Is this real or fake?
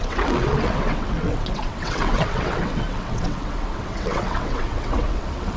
fake